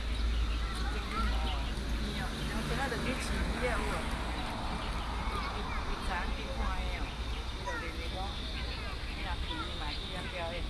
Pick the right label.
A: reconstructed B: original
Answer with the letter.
B